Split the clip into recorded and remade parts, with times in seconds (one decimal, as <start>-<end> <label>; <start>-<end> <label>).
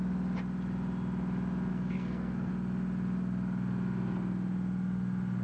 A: 0.0-1.7 recorded; 1.7-2.5 remade; 2.5-5.4 recorded